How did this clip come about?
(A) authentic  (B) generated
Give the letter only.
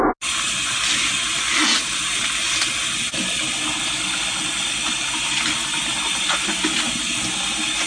A